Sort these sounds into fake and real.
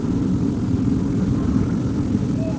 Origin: real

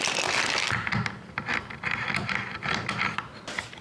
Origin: real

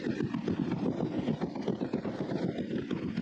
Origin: real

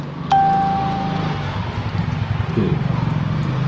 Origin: real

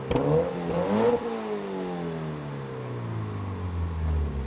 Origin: real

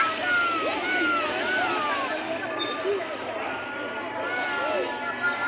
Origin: real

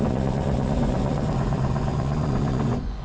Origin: fake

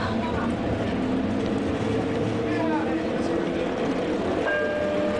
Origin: real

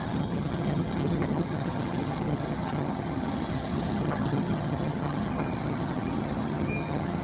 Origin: fake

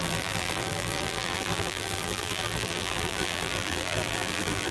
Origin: fake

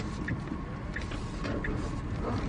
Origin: real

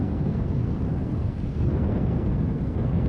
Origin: fake